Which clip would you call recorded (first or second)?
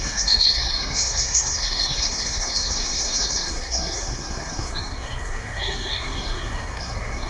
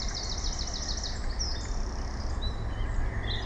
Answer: second